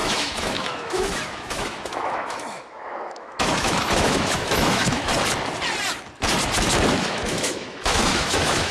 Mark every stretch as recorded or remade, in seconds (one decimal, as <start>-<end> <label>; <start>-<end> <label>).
0.0-5.1 remade; 5.1-6.9 recorded; 6.9-8.7 remade